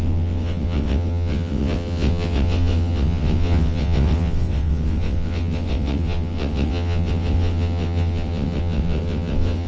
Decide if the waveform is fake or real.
fake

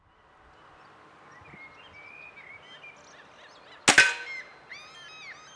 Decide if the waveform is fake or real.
real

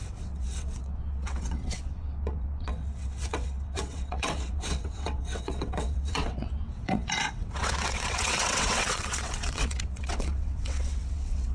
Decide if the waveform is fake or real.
fake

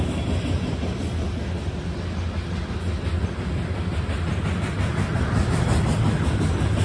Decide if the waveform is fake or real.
real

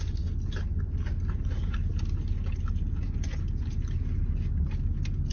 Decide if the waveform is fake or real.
real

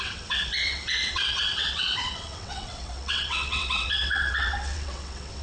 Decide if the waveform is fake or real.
fake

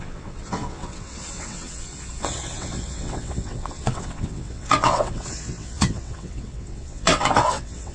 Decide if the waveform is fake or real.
fake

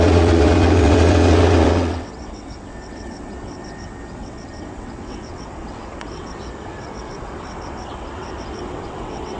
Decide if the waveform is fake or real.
fake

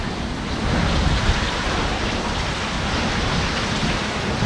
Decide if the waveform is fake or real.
real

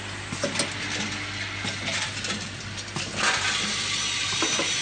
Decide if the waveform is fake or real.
real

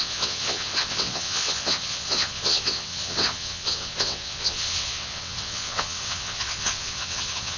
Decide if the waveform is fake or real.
fake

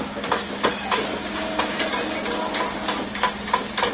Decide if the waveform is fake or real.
real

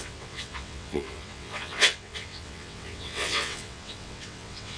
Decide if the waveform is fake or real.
fake